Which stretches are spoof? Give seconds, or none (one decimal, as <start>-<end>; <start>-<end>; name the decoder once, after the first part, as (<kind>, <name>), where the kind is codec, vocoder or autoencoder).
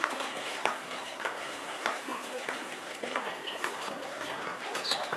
0.0-5.2 (codec, SNAC)